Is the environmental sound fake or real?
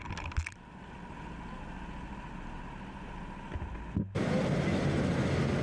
real